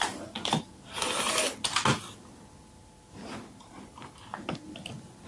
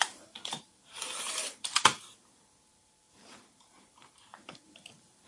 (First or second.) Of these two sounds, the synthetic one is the second